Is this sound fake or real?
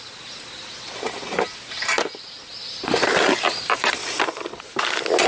real